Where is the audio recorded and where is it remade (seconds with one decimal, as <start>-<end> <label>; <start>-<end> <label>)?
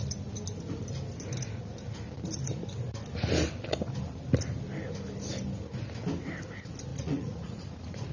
0.0-6.9 recorded; 6.9-8.1 remade